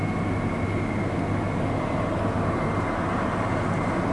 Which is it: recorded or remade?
recorded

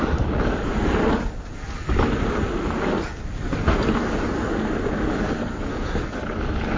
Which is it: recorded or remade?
recorded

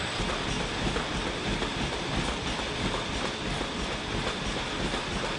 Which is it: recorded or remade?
remade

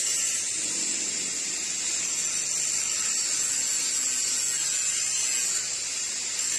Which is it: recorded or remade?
recorded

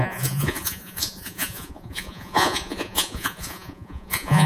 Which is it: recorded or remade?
remade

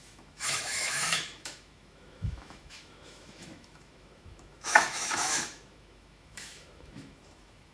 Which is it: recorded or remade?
remade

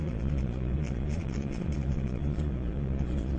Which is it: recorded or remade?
remade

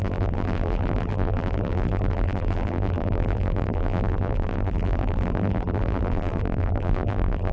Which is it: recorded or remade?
remade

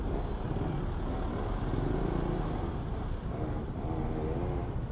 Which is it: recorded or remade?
recorded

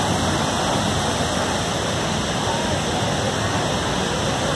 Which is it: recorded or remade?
recorded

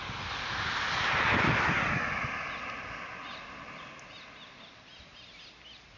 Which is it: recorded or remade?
recorded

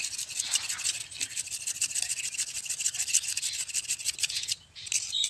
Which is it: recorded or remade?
recorded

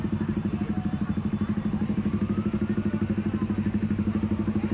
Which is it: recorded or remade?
recorded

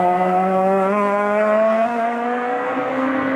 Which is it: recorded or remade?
remade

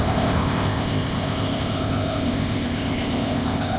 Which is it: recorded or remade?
remade